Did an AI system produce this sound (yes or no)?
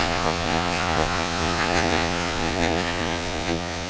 yes